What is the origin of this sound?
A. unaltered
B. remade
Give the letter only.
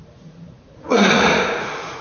B